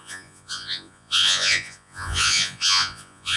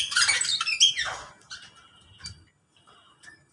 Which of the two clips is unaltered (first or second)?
second